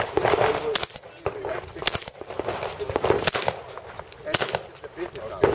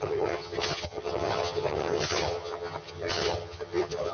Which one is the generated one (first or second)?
second